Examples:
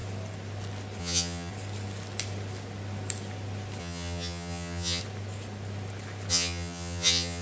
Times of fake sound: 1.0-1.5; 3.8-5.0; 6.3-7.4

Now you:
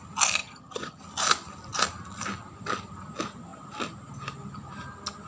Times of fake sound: 0.4-1.0

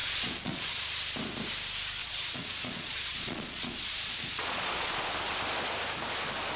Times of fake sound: 0.0-0.8; 2.0-4.9